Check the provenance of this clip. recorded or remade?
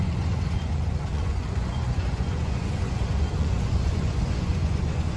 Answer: remade